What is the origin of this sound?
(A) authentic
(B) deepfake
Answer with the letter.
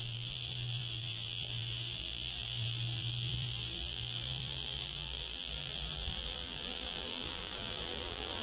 B